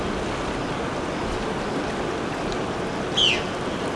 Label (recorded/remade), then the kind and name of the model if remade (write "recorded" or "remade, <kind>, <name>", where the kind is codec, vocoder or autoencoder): recorded